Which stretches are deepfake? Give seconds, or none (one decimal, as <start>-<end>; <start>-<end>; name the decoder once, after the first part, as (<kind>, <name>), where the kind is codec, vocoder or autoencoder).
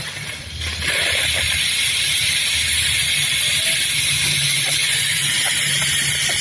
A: 4.4-5.3 (vocoder, Vocos)